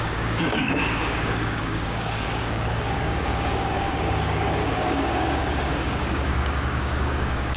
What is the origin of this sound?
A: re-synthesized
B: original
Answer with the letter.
A